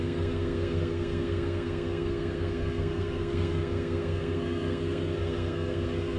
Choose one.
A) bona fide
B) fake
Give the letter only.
B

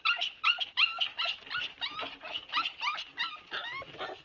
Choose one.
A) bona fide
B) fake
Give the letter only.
A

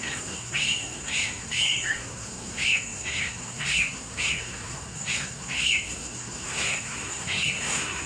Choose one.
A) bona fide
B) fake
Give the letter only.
B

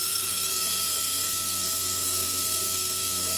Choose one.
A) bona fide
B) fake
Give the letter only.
B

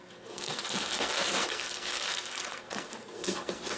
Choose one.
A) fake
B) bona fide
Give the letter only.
A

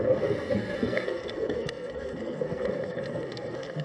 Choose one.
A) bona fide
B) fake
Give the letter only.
B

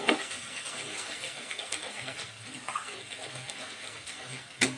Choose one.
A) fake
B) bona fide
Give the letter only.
A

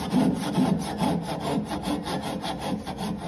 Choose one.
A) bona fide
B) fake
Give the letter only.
A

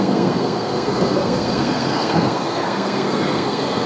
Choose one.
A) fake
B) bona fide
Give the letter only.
A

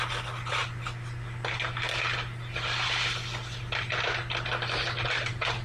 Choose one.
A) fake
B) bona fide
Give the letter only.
B